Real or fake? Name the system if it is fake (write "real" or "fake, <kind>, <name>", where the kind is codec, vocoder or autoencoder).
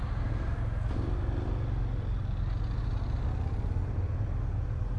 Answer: real